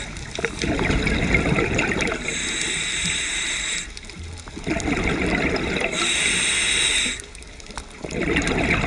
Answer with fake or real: real